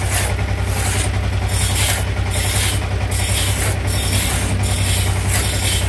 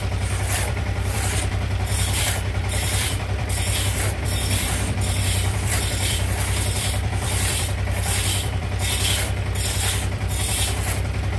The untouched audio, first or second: first